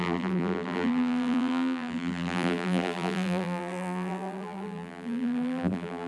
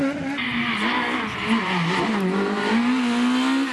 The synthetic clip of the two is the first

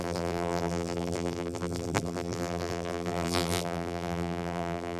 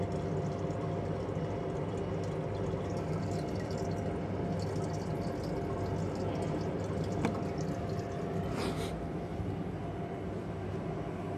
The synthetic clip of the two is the first